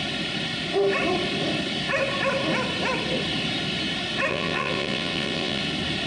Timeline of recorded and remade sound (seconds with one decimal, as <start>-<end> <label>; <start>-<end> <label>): 0.0-4.3 recorded; 4.3-5.6 remade; 5.6-6.1 recorded